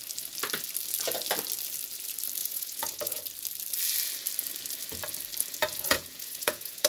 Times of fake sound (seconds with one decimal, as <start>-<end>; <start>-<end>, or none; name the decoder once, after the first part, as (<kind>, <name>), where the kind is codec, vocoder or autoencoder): 2.4-3.2 (vocoder, Vocos); 5.7-6.9

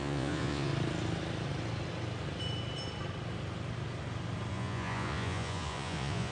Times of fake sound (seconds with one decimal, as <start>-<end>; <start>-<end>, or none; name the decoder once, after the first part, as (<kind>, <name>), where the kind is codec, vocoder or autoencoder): 0.0-0.7 (vocoder, Vocos); 4.5-6.3